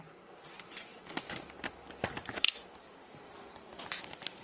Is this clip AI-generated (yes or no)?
no